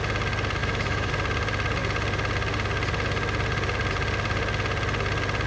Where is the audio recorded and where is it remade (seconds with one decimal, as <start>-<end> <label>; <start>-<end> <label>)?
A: 0.0-0.6 recorded; 0.6-1.1 remade; 1.1-5.5 recorded